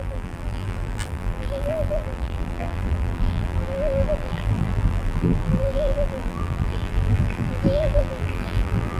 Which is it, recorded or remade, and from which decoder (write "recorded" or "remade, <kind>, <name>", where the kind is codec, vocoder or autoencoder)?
remade, vocoder, BigVGAN v2